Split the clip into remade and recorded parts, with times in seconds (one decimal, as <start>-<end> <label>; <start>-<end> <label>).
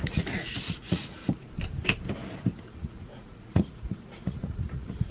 0.0-1.2 remade; 1.2-2.6 recorded; 2.6-5.1 remade